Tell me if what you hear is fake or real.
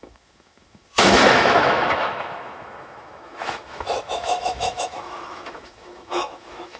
fake